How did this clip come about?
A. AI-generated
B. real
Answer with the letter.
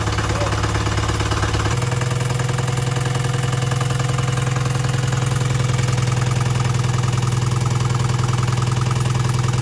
B